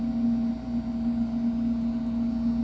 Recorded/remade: recorded